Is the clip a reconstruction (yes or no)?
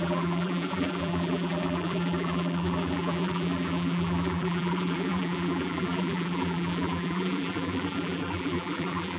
yes